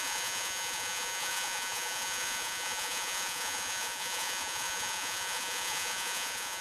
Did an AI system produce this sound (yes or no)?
yes